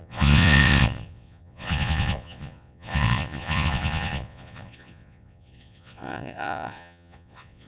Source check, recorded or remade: remade